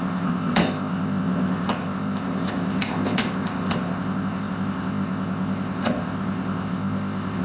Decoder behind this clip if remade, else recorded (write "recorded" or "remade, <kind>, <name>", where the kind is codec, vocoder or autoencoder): remade, codec, ZipCodec